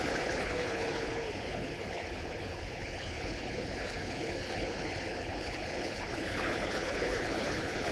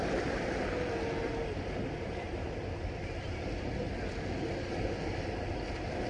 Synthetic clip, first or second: first